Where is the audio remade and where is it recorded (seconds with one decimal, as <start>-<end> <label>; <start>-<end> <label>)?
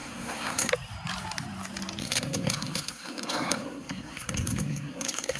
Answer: 0.0-0.7 remade; 0.7-2.0 recorded; 2.0-5.4 remade